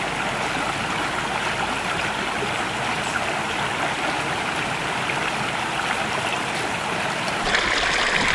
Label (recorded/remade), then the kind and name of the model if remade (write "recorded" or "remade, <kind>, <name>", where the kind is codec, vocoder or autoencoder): recorded